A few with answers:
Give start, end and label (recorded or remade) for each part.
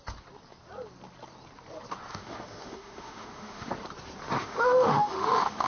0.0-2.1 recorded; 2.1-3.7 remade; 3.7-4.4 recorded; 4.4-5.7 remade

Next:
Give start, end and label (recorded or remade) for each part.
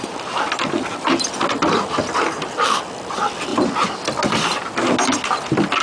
0.0-5.8 recorded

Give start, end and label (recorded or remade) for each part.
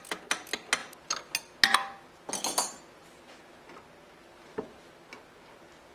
0.0-5.9 recorded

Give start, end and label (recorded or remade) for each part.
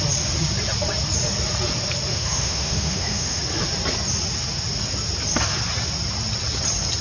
0.0-2.1 recorded; 2.1-3.4 remade; 3.4-7.0 recorded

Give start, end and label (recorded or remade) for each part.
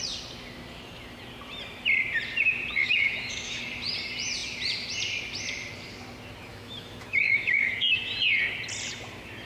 0.0-2.8 recorded; 2.8-3.6 remade; 3.6-6.5 recorded; 6.5-8.1 remade; 8.1-9.5 recorded